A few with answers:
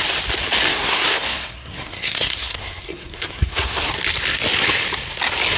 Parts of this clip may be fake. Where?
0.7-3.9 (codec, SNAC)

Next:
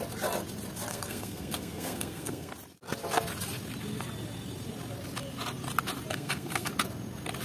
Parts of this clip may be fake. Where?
0.9-2.5 (codec, SNAC); 6.1-6.7

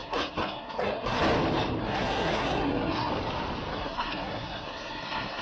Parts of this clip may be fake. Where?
0.0-1.2 (codec, SNAC); 1.8-3.1; 3.7-5.4

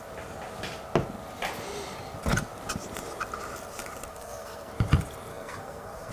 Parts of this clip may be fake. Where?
4.1-4.7 (codec, SNAC); 5.3-6.1